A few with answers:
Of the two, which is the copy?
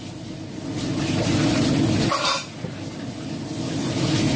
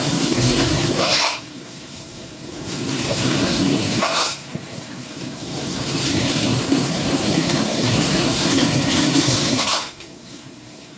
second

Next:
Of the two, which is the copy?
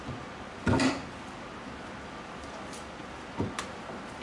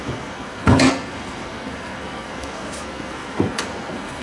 second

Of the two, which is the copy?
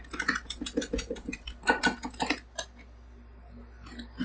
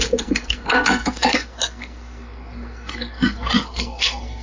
second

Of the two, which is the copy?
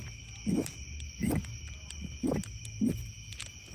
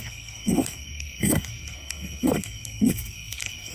second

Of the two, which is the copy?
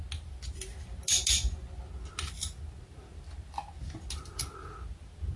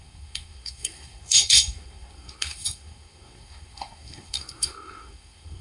second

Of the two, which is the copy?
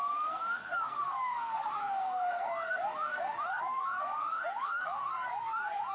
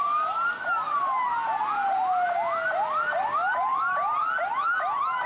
first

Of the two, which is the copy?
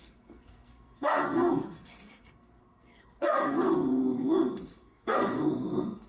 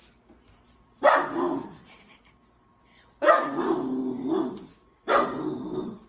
first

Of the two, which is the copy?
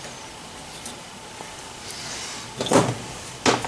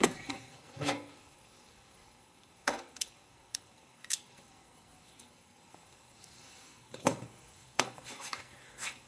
second